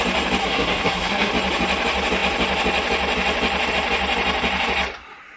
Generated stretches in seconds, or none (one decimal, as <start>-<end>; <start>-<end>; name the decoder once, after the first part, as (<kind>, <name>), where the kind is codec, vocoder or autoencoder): 0.4-1.3 (codec, SNAC)